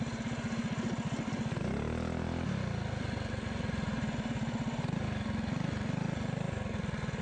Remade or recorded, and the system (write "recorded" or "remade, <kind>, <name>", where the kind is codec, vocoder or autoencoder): recorded